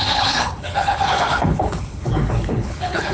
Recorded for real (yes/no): no